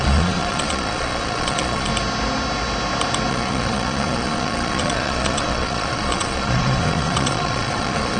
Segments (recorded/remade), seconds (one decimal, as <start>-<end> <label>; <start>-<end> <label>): 0.0-1.9 remade; 1.9-3.3 recorded; 3.3-8.2 remade